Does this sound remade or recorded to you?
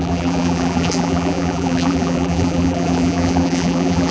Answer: remade